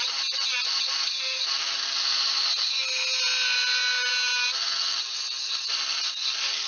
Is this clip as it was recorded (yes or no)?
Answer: yes